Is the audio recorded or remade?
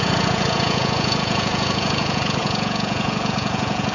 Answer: remade